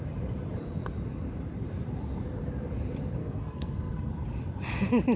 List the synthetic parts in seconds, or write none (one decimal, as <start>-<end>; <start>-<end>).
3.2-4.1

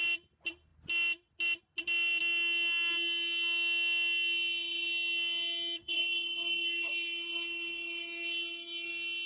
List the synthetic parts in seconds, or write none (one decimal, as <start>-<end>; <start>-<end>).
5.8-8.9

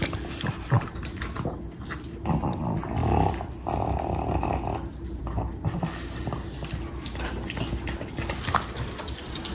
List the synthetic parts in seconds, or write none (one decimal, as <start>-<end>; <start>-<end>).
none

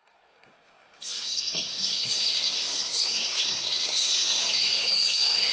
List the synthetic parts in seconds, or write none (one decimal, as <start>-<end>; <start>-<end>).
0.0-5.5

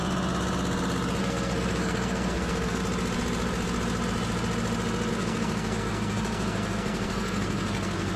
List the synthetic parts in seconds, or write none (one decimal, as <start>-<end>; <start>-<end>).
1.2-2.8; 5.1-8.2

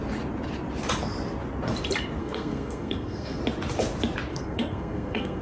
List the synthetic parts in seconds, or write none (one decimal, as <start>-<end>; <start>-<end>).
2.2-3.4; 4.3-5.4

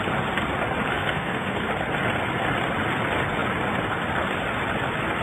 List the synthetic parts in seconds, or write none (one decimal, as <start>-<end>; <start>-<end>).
0.9-1.7